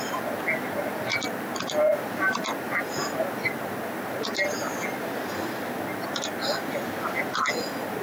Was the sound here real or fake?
real